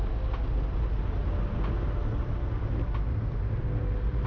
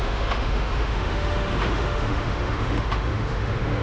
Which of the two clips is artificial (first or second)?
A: second